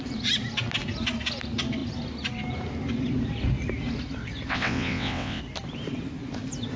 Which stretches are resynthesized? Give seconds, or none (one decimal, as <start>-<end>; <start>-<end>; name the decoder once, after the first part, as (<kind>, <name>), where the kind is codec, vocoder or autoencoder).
4.5-5.4 (vocoder, WaveNeXt)